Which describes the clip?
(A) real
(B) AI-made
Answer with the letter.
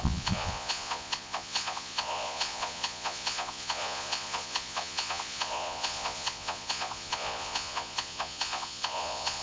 B